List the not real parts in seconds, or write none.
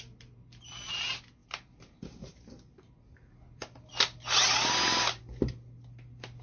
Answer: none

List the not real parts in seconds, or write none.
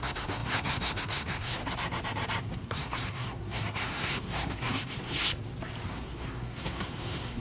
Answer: 0.0-1.6 (codec, SNAC); 2.4-5.3; 5.9-7.4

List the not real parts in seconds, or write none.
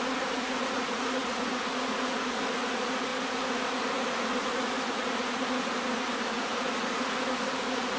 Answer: 0.0-8.0 (vocoder, Vocos)